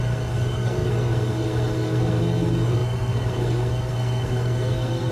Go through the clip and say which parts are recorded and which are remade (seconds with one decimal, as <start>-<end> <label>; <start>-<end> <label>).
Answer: 0.0-5.1 remade